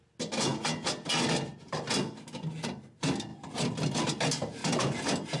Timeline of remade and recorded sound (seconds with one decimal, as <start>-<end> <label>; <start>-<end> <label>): 0.0-5.4 recorded